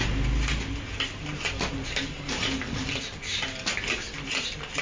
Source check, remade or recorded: recorded